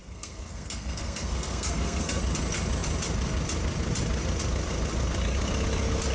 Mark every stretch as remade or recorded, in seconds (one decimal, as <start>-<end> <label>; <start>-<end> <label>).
0.0-2.2 remade; 2.2-6.1 recorded